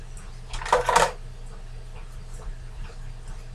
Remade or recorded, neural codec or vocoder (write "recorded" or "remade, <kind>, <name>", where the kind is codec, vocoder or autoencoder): recorded